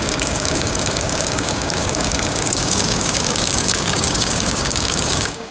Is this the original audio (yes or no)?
no